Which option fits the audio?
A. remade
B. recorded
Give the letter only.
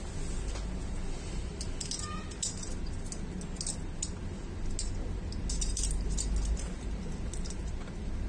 B